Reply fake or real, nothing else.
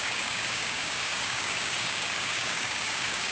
fake